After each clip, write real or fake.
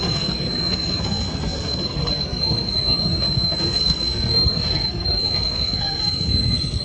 fake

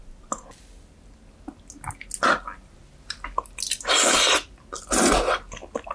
real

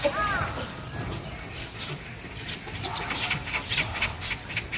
real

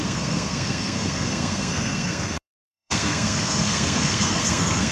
fake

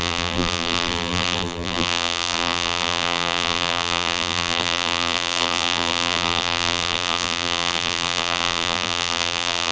fake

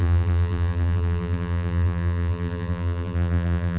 fake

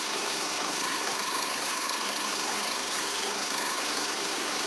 fake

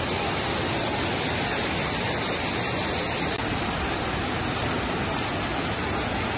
real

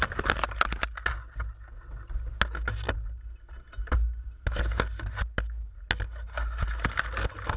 real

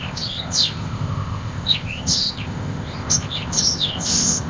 fake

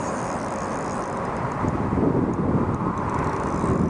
fake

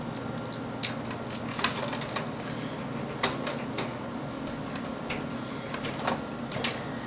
real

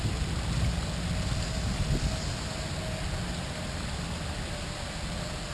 real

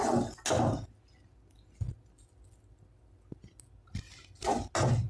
real